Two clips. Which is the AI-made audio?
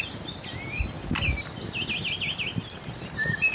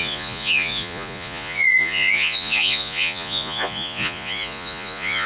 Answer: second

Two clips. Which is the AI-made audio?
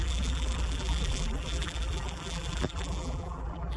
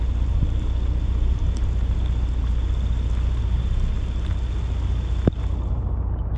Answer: first